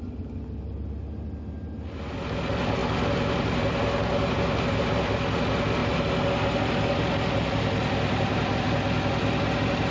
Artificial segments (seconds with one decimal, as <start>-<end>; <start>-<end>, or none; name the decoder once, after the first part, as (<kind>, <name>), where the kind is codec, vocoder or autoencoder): none